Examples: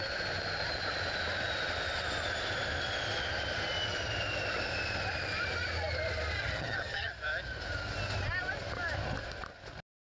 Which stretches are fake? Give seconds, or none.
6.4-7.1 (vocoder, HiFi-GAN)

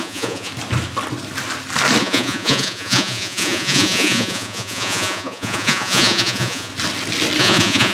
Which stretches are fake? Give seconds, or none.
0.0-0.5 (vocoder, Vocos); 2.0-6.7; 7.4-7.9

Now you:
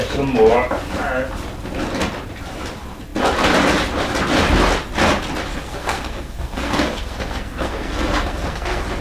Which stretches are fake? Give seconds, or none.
5.5-9.0 (codec, SNAC)